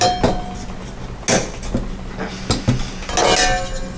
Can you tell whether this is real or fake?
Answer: real